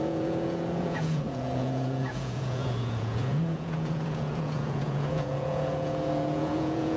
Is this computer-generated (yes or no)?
yes